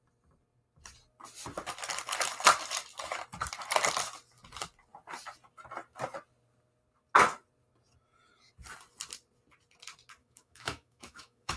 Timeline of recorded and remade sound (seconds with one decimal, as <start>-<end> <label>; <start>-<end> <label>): 0.0-10.2 recorded; 10.2-11.6 remade